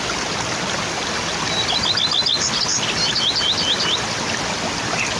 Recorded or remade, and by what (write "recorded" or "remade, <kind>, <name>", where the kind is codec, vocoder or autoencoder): recorded